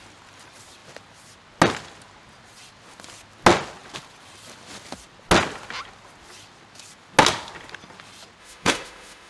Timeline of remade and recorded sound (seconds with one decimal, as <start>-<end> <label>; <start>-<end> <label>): 0.0-8.4 recorded; 8.4-9.3 remade